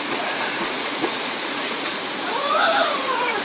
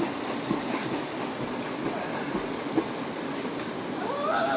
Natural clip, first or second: second